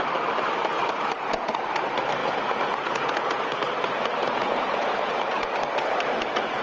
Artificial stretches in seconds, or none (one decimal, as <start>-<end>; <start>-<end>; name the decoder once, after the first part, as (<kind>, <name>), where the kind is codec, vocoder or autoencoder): 0.8-1.7 (vocoder, Vocos); 2.2-3.6; 4.2-5.5